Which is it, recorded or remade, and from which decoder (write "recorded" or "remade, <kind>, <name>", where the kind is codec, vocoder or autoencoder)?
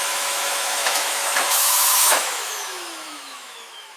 remade, autoencoder, DAC-VAE